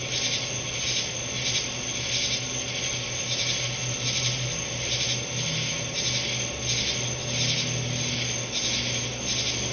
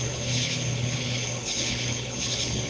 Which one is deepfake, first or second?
second